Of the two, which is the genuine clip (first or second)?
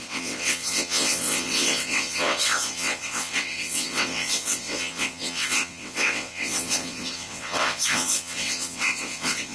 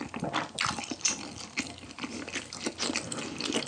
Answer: second